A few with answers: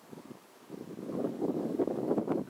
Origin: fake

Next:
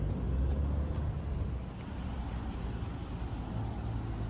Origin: real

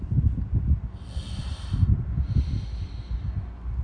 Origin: real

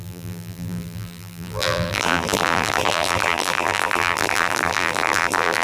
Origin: fake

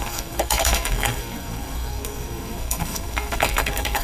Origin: fake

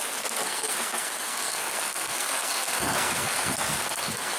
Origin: fake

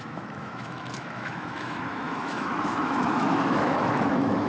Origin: fake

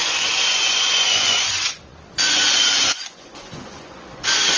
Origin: fake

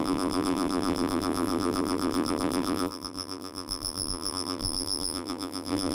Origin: fake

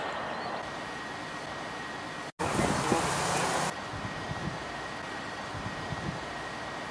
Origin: real